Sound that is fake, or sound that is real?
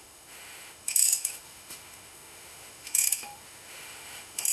fake